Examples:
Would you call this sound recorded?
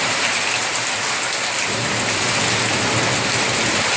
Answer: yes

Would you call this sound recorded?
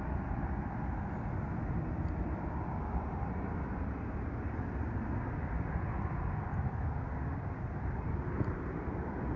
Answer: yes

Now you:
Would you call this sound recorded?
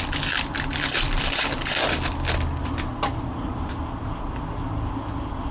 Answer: yes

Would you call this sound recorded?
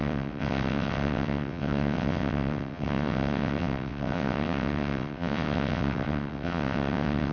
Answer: no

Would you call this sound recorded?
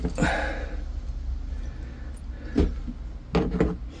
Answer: yes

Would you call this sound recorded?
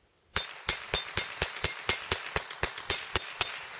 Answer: yes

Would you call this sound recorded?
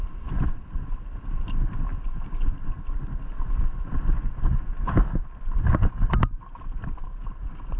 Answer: yes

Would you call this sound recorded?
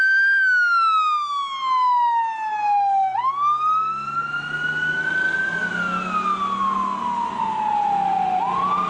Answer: yes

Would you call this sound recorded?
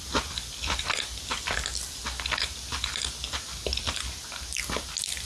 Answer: yes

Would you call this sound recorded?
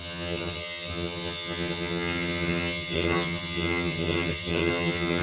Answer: no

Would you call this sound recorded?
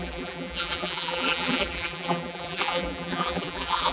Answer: no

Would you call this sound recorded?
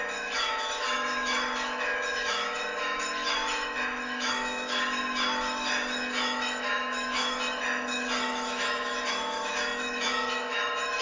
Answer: no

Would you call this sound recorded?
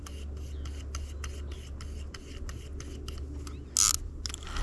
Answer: yes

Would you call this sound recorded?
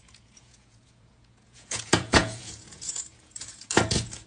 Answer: no